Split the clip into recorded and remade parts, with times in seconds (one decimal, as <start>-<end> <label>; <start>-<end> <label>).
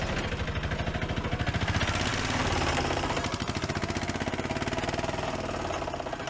0.0-2.1 recorded; 2.1-3.7 remade; 3.7-6.3 recorded